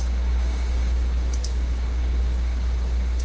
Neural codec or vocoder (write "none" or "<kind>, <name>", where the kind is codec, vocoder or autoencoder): codec, DAC